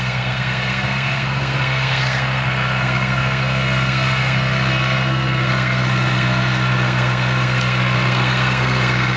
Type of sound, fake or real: fake